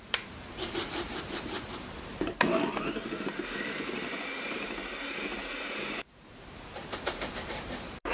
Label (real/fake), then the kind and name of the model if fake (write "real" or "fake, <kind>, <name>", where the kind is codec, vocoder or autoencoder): fake, vocoder, BigVGAN v2